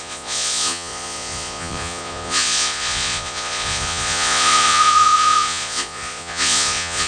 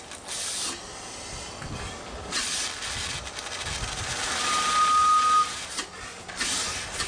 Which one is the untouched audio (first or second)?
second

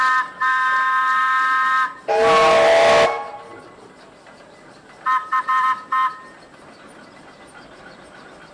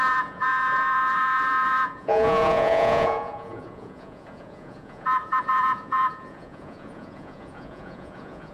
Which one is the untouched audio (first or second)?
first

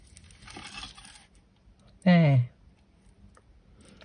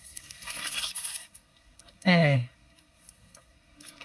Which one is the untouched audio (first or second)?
first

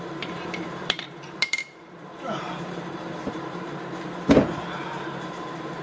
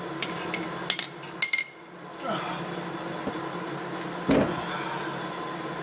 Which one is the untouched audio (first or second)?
second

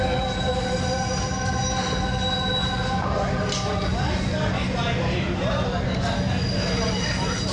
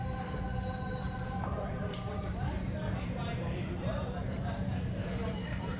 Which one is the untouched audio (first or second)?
first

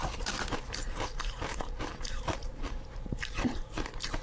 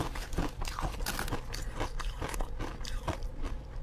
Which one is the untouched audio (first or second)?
second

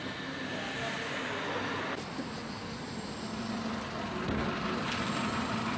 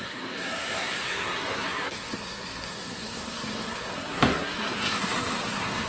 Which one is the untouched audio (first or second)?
first